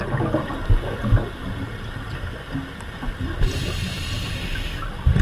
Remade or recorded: recorded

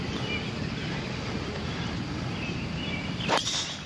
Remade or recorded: recorded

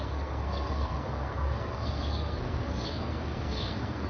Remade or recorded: remade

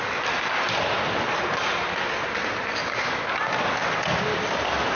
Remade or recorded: recorded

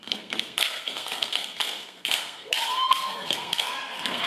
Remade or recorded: remade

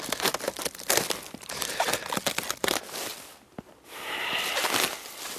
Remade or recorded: recorded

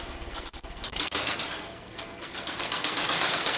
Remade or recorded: remade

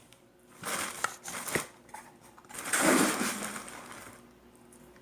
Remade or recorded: recorded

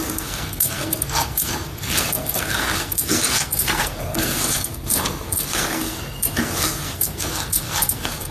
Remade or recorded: remade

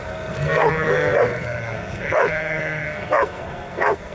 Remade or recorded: remade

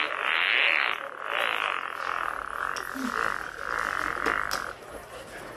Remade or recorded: recorded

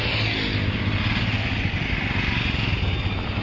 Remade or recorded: recorded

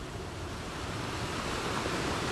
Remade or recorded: recorded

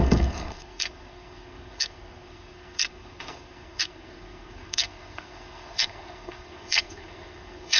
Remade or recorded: remade